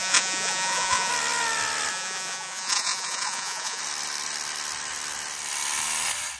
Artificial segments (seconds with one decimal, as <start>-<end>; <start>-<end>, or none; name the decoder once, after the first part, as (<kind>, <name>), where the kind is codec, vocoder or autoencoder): 0.0-1.1 (vocoder, Vocos); 1.9-3.8